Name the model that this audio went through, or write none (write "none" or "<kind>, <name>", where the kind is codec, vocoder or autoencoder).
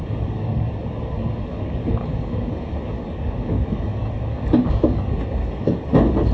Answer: codec, DAC